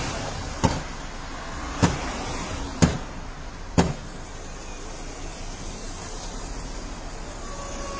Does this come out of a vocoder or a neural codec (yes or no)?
no